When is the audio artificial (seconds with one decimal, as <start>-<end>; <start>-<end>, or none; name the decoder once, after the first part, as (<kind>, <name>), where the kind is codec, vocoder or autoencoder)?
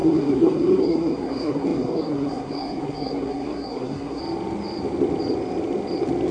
0.0-4.2 (codec, SNAC)